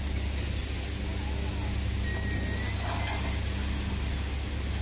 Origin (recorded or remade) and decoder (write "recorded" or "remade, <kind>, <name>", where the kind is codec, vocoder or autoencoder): recorded